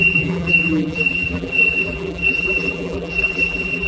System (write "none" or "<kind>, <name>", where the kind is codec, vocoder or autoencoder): vocoder, BigVGAN v2